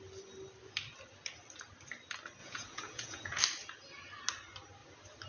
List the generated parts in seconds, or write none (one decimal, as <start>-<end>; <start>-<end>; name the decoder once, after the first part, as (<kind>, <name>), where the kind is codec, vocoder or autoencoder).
2.4-3.4 (vocoder, Vocos)